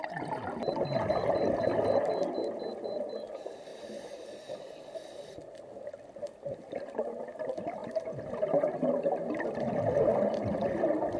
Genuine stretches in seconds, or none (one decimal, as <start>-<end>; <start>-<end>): 0.0-3.7; 5.4-7.8; 9.0-11.2